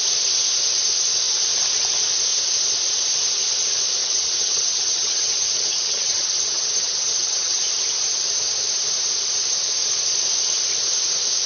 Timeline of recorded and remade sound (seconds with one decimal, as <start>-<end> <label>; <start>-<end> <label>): 0.0-4.0 recorded; 4.0-7.6 remade; 7.6-11.5 recorded